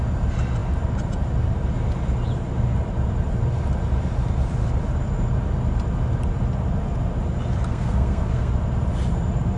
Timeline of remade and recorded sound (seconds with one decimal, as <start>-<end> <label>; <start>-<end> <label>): 0.0-7.7 recorded; 7.7-8.5 remade; 8.5-9.6 recorded